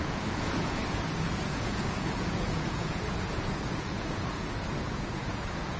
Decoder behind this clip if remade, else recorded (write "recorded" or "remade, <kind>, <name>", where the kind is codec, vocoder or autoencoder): remade, vocoder, Vocos